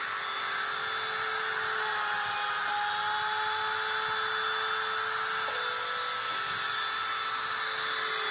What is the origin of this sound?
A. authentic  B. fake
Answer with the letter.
A